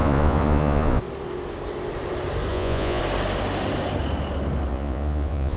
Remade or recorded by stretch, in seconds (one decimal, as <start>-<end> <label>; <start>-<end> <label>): 0.0-1.0 remade; 1.0-2.5 recorded; 2.5-3.0 remade; 3.0-4.7 recorded; 4.7-5.6 remade